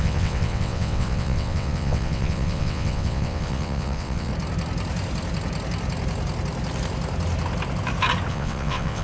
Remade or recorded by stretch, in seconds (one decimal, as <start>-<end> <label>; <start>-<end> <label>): 0.0-4.3 remade; 4.3-8.3 recorded; 8.3-9.0 remade